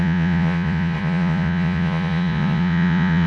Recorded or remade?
remade